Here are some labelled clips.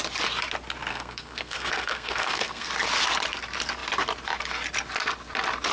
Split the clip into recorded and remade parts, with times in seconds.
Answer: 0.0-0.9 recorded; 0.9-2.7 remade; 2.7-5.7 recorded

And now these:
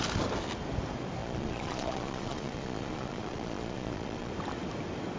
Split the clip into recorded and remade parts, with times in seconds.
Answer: 0.0-1.2 recorded; 1.2-4.3 remade; 4.3-5.2 recorded